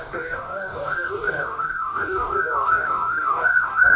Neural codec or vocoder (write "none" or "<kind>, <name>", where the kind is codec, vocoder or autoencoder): codec, DAC